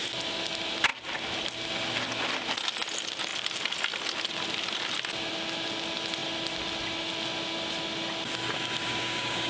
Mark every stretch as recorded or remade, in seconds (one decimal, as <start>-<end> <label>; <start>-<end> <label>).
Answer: 0.0-8.8 recorded; 8.8-9.5 remade